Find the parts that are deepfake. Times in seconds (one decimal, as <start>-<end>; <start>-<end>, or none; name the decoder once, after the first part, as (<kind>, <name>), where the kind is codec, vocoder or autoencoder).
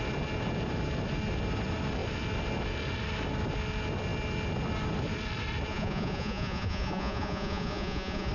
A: 5.7-8.3 (vocoder, Vocos)